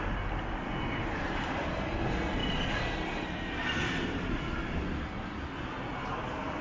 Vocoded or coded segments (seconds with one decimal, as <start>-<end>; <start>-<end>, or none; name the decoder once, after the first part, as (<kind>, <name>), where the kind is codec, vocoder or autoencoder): none